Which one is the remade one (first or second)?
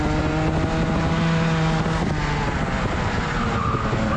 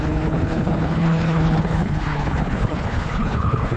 second